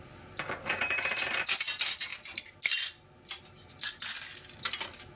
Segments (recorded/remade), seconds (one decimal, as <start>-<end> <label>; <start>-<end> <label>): 0.0-5.2 recorded